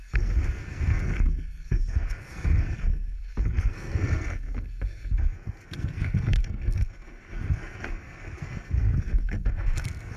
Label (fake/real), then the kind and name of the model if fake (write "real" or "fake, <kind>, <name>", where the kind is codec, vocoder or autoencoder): fake, codec, SNAC